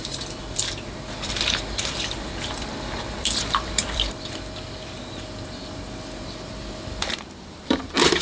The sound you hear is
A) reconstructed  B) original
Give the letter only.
A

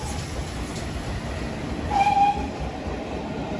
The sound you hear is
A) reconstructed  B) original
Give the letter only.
B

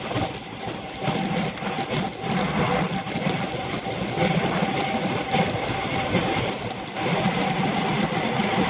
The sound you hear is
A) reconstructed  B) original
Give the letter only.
B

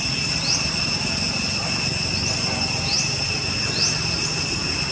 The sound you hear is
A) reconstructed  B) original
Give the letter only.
A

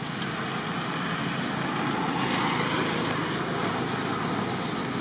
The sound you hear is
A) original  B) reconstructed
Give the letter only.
A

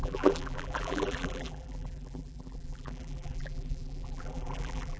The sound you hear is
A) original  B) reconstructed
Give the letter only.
B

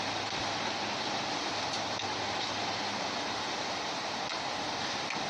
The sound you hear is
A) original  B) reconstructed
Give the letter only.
A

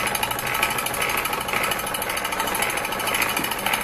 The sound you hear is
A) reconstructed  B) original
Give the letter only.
B